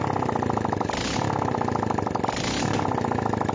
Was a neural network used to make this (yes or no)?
no